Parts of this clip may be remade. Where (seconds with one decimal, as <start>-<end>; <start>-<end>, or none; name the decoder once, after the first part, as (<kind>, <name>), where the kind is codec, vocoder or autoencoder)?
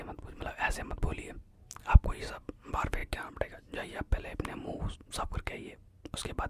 none